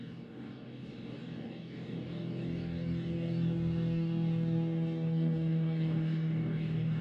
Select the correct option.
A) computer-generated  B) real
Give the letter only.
A